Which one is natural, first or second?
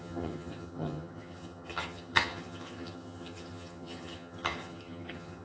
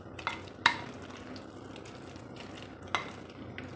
second